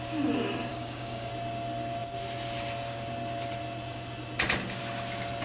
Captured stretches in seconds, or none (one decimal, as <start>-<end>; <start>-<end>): 0.0-0.7; 1.3-5.4